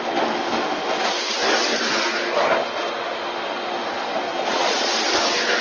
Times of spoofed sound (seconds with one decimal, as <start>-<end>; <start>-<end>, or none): 4.3-4.9